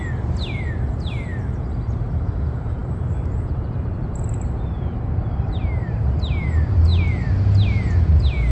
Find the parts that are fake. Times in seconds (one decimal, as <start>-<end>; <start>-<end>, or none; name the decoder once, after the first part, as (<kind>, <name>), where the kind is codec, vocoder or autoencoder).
0.0-6.9 (vocoder, BigVGAN v2); 8.1-8.5